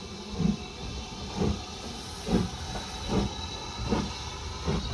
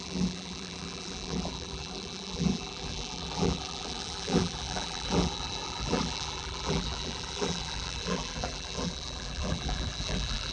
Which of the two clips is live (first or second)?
first